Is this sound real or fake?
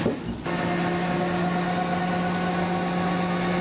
real